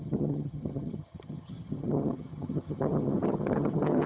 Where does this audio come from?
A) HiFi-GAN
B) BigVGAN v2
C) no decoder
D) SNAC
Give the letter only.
A